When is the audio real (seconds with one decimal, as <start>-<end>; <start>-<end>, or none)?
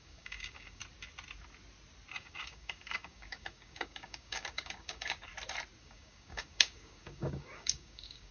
0.8-2.1; 5.3-5.8